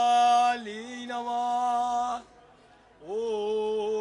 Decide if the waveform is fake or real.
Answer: real